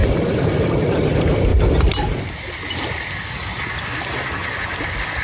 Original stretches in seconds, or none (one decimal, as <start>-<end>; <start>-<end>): 0.7-1.5; 3.7-5.2

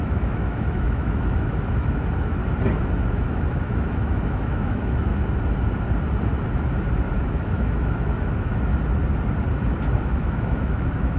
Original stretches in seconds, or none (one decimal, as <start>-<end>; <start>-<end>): 2.4-3.1; 5.1-7.2; 8.7-10.0